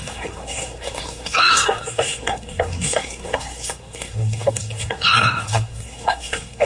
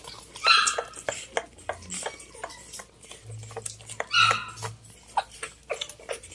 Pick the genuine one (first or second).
second